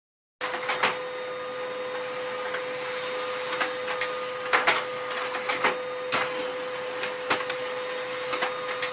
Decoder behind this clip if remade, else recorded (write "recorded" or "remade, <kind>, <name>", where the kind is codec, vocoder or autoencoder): recorded